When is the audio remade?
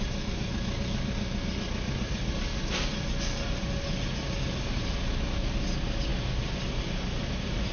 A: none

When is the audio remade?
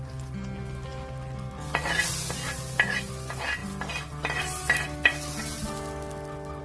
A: none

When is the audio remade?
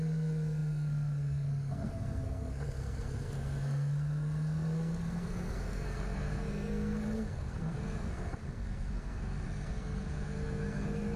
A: 0.0-11.2 (codec, SNAC)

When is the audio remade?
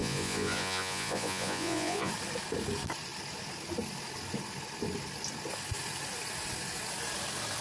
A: 0.0-2.1 (vocoder, Vocos)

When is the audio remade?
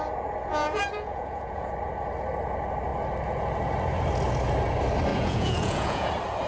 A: 0.5-1.7 (vocoder, Vocos); 5.1-6.1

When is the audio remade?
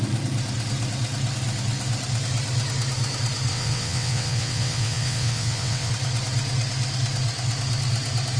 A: 3.5-5.9 (vocoder, WaveNeXt)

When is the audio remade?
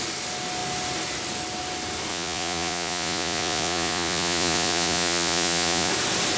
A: 2.1-5.9 (vocoder, Vocos)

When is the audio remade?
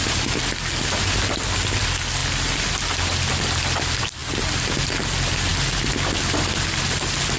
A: none